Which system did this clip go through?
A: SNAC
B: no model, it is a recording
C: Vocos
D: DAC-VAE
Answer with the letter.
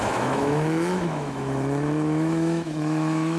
D